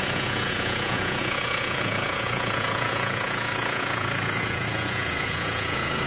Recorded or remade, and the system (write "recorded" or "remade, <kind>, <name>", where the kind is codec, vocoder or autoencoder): remade, vocoder, Vocos